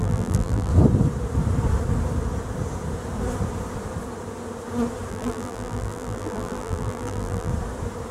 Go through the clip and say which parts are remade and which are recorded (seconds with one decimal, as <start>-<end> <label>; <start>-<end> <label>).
0.0-0.7 remade; 0.7-5.1 recorded; 5.1-7.5 remade; 7.5-8.1 recorded

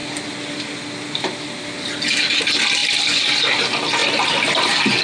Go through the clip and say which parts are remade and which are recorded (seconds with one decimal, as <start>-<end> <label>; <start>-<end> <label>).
0.0-5.0 recorded

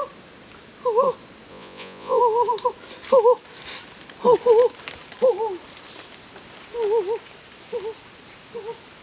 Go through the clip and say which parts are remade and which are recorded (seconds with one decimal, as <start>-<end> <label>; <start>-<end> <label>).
0.0-1.5 recorded; 1.5-2.2 remade; 2.2-9.0 recorded

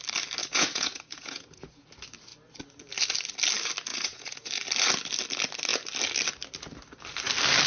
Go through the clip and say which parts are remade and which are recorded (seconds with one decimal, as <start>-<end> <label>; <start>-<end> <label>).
0.0-0.4 recorded; 0.4-1.9 remade; 1.9-3.9 recorded; 3.9-4.5 remade; 4.5-7.7 recorded

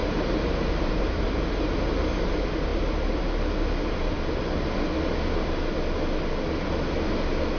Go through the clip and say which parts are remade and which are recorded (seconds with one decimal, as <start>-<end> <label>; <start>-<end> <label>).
0.0-1.4 remade; 1.4-7.6 recorded

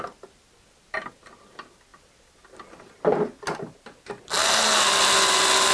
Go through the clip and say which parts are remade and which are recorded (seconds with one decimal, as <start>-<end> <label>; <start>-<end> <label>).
0.0-5.7 recorded